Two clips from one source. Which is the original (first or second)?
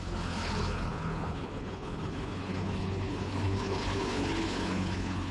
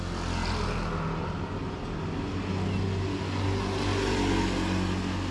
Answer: second